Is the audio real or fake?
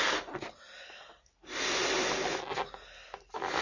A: real